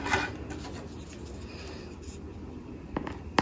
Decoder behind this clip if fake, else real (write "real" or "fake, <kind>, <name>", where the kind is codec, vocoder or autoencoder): real